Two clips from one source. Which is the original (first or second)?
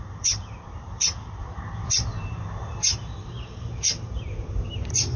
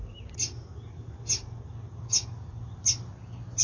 second